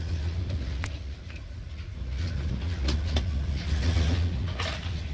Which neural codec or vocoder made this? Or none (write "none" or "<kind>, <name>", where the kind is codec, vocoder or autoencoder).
vocoder, Vocos